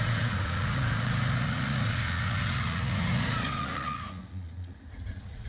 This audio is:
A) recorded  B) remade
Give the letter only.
B